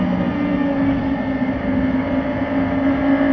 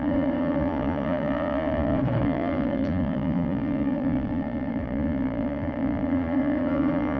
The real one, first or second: first